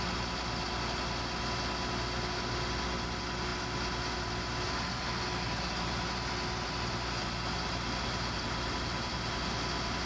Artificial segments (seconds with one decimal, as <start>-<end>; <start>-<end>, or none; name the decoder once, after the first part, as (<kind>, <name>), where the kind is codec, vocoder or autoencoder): none